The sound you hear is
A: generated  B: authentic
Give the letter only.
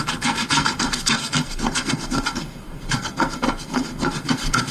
A